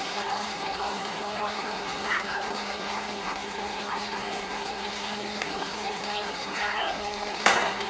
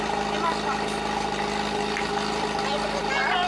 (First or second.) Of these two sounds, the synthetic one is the first